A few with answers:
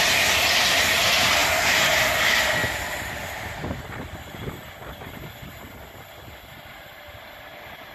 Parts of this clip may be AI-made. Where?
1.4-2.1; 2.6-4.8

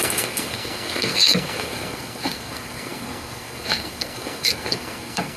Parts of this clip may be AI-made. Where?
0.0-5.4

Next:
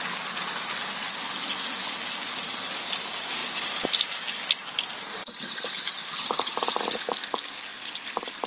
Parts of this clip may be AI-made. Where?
5.2-5.8; 7.7-8.5

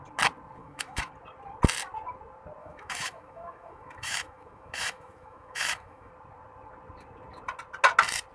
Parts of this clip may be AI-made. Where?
0.6-1.1; 2.6-6.1

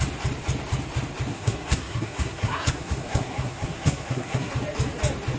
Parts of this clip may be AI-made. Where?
1.3-4.5